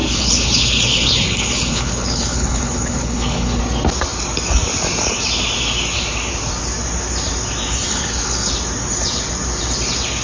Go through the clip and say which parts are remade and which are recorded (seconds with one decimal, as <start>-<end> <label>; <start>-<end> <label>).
0.0-3.6 remade; 3.6-7.9 recorded; 7.9-8.5 remade; 8.5-10.2 recorded